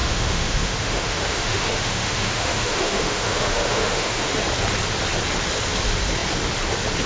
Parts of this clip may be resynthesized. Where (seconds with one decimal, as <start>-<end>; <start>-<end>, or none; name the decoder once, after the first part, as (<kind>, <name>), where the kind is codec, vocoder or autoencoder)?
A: 0.0-4.3 (autoencoder, DAC-VAE)